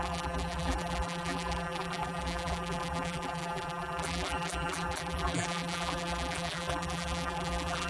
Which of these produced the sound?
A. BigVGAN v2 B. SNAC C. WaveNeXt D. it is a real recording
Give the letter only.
A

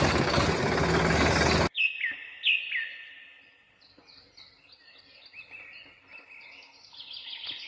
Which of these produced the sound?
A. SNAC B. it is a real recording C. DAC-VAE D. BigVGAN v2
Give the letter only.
B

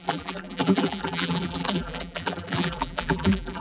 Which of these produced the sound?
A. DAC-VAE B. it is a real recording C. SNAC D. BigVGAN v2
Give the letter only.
D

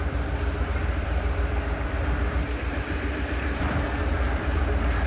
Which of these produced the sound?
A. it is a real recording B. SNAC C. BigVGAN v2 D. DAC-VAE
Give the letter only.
C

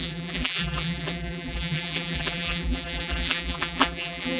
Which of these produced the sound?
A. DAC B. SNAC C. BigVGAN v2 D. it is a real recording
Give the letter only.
C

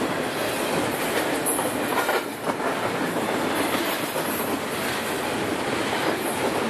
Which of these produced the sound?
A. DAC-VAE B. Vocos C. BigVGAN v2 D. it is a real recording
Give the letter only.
D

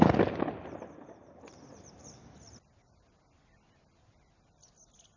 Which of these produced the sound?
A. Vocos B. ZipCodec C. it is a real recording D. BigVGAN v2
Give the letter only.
C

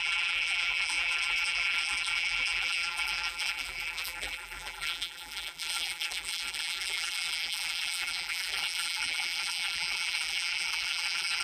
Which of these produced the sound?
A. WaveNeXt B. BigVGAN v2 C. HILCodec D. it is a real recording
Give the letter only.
B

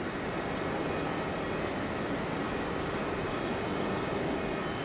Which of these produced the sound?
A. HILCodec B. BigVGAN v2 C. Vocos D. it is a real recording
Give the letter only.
D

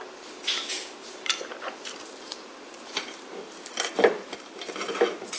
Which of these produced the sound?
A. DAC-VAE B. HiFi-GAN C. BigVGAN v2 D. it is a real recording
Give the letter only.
C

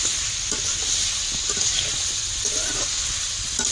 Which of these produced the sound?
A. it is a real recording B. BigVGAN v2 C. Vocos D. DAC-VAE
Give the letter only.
A